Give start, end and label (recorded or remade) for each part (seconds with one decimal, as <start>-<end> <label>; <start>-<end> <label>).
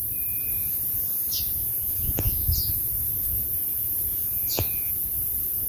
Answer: 0.0-0.6 recorded; 0.6-2.7 remade; 2.7-4.1 recorded; 4.1-4.9 remade; 4.9-5.7 recorded